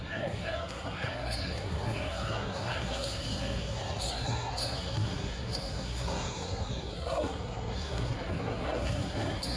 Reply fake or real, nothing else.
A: fake